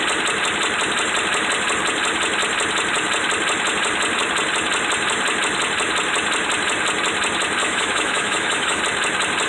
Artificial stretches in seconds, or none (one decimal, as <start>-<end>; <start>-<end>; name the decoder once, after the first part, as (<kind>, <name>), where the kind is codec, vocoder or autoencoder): 7.6-8.8 (autoencoder, DAC-VAE)